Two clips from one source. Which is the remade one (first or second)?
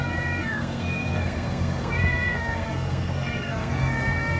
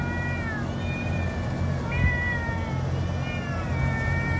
first